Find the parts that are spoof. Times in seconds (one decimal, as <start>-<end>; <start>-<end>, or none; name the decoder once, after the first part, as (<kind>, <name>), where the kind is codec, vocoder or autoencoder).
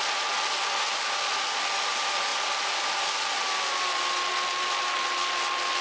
none